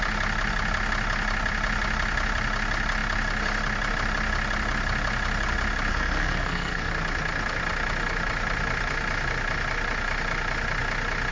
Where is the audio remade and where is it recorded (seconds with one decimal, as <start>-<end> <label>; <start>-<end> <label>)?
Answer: 0.0-5.9 recorded; 5.9-6.9 remade; 6.9-11.3 recorded